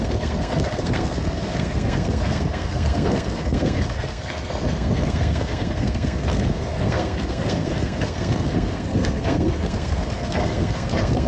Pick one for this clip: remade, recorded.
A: remade